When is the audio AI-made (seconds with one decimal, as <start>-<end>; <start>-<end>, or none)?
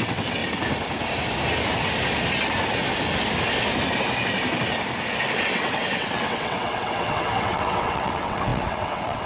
0.0-0.4; 5.4-9.3